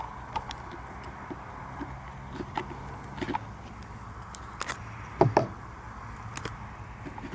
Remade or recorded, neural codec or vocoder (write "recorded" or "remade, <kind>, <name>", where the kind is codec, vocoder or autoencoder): recorded